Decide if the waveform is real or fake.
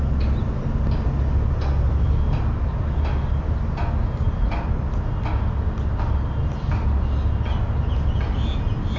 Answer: real